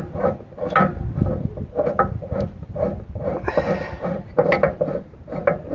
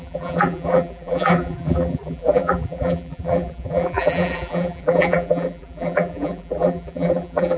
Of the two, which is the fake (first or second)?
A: second